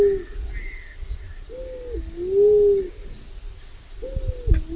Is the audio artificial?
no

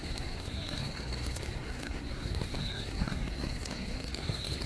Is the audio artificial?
yes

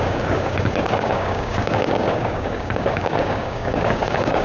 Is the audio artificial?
yes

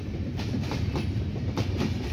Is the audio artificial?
yes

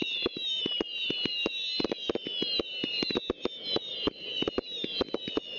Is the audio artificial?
no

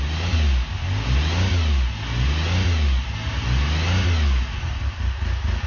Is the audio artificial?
no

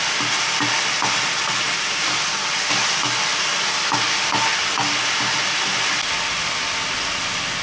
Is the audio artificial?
no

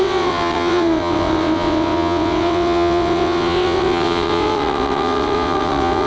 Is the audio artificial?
yes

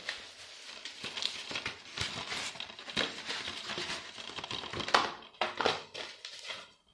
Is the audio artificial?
no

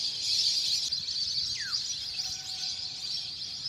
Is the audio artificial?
no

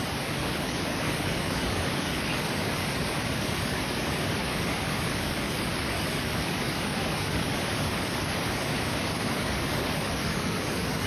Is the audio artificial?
yes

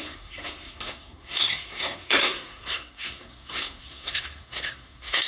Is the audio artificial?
yes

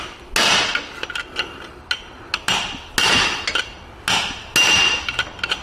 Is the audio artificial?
no